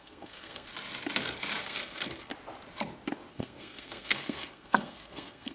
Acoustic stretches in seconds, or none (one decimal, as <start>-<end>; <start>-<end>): 0.7-1.6; 2.3-3.3